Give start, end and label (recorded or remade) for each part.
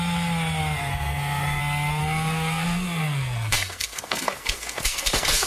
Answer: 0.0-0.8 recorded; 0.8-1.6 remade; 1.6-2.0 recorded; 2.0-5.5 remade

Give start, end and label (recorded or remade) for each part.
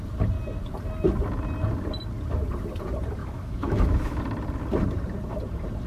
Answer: 0.0-3.2 recorded; 3.2-4.2 remade; 4.2-5.9 recorded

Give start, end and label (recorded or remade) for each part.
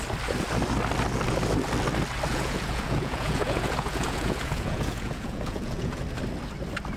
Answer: 0.0-2.3 recorded; 2.3-6.0 remade; 6.0-7.0 recorded